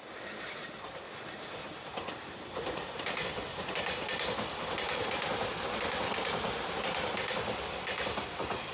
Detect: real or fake fake